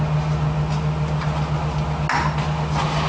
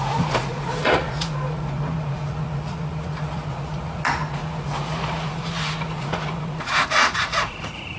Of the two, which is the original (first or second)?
first